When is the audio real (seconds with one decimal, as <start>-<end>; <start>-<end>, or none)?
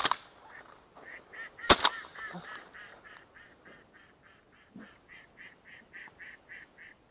0.0-7.1